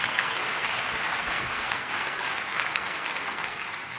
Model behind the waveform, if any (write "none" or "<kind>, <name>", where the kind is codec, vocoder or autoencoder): codec, SNAC